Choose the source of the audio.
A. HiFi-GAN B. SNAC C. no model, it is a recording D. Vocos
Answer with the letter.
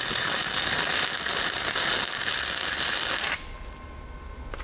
C